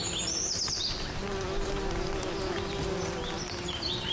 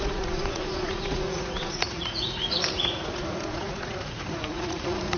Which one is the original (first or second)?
first